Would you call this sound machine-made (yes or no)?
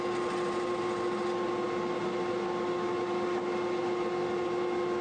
no